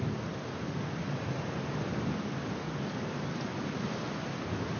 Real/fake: real